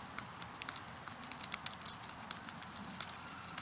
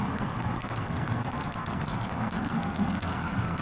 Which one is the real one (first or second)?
first